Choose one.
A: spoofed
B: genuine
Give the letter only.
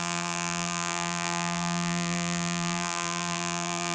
A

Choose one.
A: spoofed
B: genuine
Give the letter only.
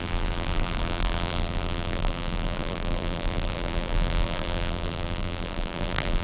A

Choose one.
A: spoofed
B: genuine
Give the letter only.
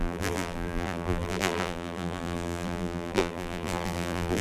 A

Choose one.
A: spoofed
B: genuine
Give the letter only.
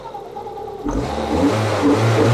B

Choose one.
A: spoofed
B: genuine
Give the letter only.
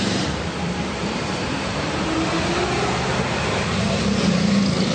A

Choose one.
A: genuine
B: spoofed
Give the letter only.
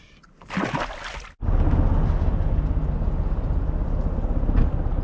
A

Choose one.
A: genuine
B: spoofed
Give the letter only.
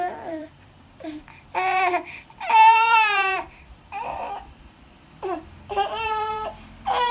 B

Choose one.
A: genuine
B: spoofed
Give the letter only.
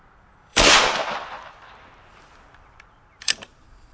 B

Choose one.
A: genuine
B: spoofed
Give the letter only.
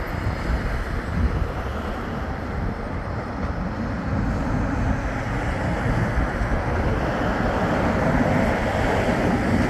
A